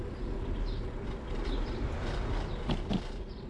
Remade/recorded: recorded